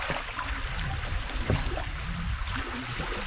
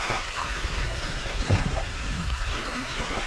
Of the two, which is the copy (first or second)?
second